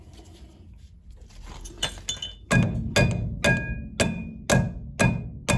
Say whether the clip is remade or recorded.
recorded